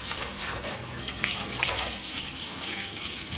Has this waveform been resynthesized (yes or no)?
yes